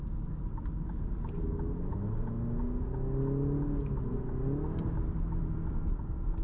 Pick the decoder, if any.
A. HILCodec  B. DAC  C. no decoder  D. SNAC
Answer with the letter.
C